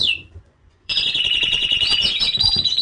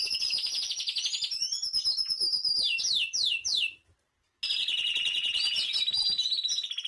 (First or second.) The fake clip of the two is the first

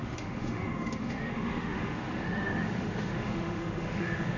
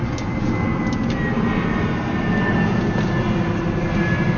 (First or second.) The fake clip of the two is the first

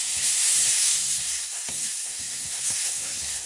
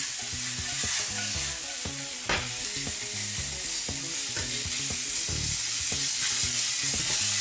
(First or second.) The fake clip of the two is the first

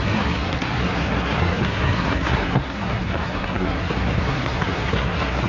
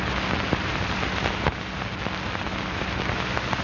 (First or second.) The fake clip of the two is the first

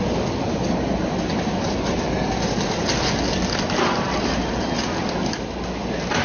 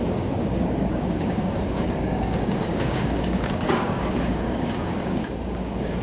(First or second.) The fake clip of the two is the second